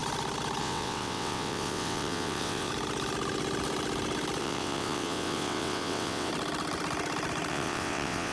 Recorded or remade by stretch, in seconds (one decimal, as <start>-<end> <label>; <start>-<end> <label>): 0.0-0.6 recorded; 0.6-2.7 remade; 2.7-4.4 recorded; 4.4-6.3 remade; 6.3-7.5 recorded; 7.5-8.3 remade